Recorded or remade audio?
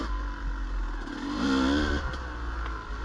recorded